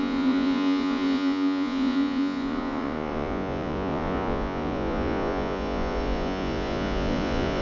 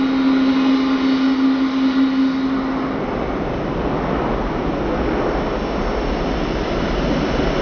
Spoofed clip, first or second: first